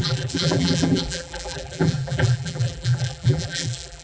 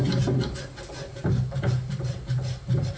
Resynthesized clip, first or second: first